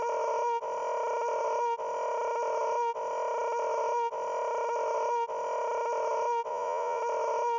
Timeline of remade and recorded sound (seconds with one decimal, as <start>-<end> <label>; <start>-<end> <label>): 0.0-6.5 recorded; 6.5-7.0 remade; 7.0-7.6 recorded